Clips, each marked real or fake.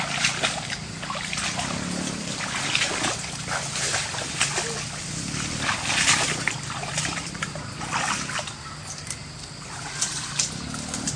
real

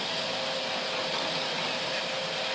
real